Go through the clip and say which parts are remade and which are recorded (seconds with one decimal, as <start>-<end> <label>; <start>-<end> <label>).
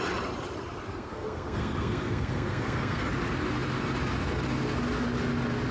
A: 0.0-0.9 recorded; 0.9-3.1 remade; 3.1-5.7 recorded